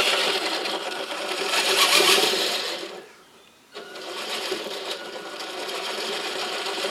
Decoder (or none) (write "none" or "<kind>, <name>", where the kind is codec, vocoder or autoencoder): vocoder, BigVGAN v2